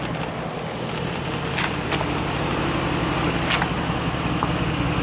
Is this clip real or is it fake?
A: real